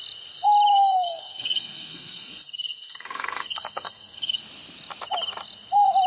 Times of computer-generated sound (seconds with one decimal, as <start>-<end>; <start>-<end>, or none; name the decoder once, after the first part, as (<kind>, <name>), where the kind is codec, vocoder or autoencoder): 0.7-4.4 (codec, SNAC)